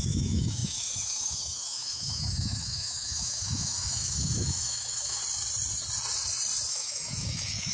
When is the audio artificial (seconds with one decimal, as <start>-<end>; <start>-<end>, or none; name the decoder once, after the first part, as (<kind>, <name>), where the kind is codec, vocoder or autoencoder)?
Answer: 0.0-5.2 (autoencoder, DAC-VAE); 6.7-7.7

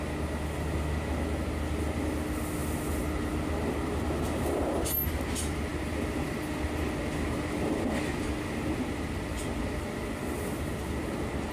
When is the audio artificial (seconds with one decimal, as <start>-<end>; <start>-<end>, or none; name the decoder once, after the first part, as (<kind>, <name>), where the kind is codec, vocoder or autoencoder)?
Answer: none

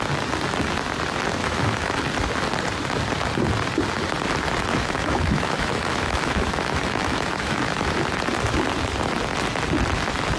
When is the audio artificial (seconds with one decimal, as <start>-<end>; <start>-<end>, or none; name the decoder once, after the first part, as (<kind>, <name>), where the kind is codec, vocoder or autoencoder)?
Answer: 1.4-2.0 (autoencoder, DAC-VAE); 4.8-7.9

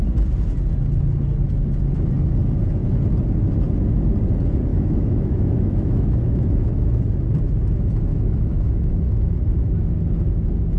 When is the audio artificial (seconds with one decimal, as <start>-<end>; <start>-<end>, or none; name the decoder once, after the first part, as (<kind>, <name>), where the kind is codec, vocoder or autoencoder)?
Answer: 4.7-7.0 (autoencoder, DAC-VAE); 8.1-9.4

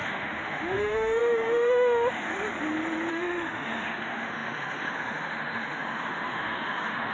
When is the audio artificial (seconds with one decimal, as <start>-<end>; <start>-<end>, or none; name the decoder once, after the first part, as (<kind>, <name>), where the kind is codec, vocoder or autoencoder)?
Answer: 0.0-2.3 (autoencoder, DAC-VAE); 3.1-7.1

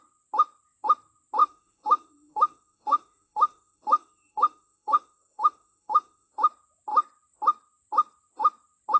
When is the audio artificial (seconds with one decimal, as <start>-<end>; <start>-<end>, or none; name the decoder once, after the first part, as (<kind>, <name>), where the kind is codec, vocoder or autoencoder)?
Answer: 1.4-6.3 (autoencoder, DAC-VAE)

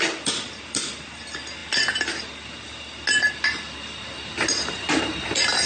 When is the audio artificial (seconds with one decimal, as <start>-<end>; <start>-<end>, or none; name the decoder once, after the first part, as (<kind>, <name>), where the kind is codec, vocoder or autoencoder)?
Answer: none